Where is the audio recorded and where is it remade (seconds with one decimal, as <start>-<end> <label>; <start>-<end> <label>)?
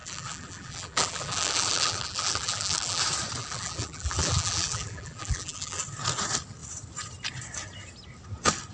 0.0-3.0 remade; 3.0-3.4 recorded; 3.4-5.8 remade; 5.8-8.7 recorded